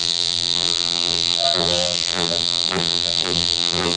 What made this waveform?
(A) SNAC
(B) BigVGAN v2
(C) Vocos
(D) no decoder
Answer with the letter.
B